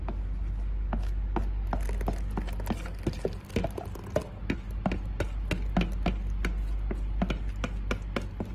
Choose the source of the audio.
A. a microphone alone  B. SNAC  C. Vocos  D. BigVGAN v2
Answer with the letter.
A